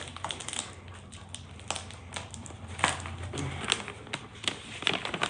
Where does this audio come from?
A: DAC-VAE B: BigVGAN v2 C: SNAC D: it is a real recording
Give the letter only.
D